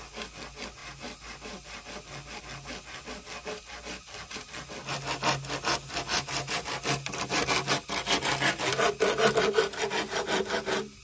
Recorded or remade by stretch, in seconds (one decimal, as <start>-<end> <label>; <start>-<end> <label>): 0.0-11.0 recorded